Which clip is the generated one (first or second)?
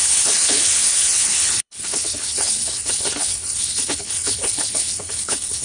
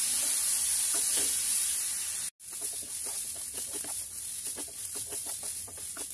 first